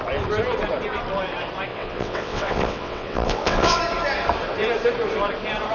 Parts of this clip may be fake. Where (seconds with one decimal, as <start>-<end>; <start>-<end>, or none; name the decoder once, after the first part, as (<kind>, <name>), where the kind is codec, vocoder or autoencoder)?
1.7-3.8 (vocoder, WaveNeXt)